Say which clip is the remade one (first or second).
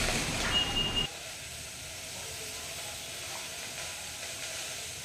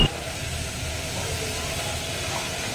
first